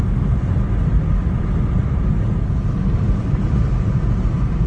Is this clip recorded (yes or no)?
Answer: yes